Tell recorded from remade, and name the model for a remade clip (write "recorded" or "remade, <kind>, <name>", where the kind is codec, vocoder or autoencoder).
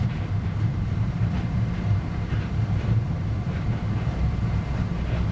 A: remade, vocoder, BigVGAN v2